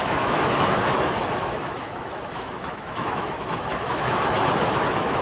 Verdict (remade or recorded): remade